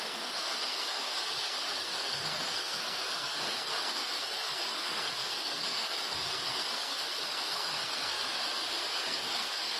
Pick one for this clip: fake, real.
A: fake